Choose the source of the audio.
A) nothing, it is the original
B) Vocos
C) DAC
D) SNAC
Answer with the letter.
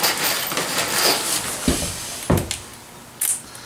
A